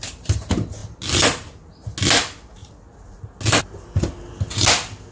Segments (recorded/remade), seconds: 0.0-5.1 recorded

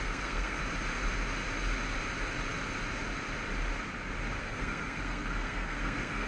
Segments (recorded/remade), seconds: 0.0-0.6 remade; 0.6-4.4 recorded; 4.4-6.3 remade